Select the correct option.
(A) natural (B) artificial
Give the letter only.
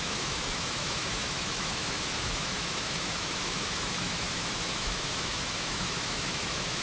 B